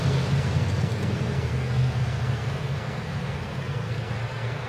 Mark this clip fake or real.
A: fake